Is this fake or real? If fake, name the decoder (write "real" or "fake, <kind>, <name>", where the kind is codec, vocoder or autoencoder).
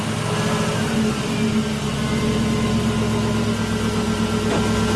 real